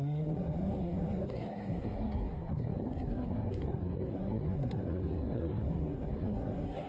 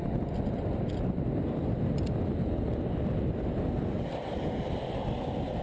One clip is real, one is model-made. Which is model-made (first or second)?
first